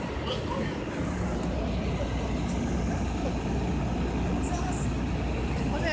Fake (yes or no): no